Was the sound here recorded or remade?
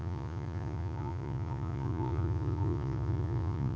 remade